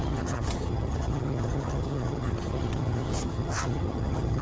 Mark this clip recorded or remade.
remade